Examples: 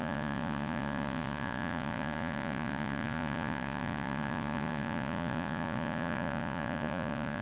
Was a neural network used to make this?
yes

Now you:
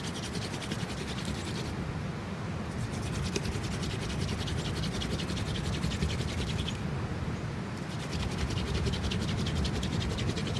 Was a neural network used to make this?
no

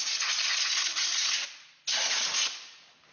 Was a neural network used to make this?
no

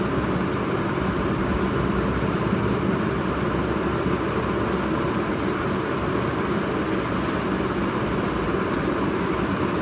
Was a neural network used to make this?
no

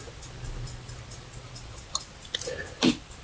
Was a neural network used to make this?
no